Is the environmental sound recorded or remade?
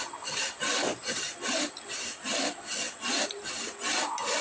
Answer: recorded